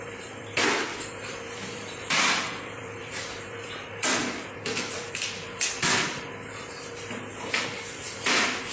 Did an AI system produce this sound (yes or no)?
yes